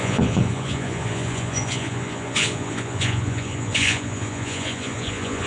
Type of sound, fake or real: fake